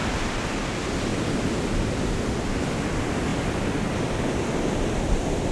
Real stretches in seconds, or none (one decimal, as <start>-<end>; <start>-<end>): 0.0-1.1; 1.8-5.5